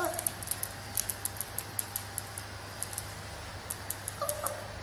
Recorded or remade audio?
recorded